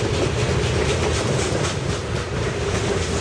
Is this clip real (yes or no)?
yes